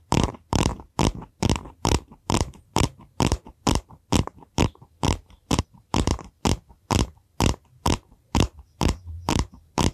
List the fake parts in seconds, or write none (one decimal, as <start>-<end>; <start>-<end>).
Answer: 0.0-6.1; 7.8-9.9